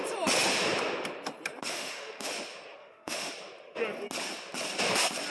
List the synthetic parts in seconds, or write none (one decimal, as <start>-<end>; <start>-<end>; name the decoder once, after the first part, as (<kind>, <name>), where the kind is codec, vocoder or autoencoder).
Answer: 1.7-2.3 (autoencoder, DAC-VAE); 2.8-3.3